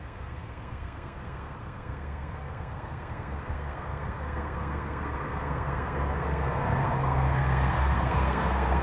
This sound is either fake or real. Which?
fake